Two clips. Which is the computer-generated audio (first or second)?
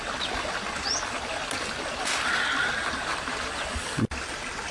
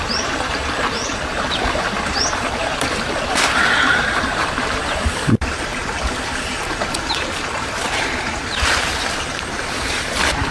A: second